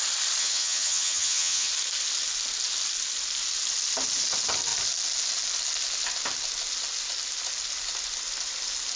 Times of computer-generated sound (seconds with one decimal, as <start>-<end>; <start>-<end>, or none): 0.4-1.7